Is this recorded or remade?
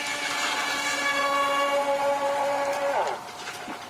remade